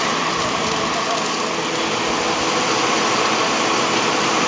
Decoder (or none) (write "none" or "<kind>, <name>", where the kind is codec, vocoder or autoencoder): none